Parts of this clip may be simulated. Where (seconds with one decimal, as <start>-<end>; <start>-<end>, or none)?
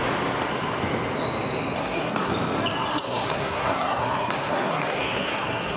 1.8-2.3; 2.9-5.8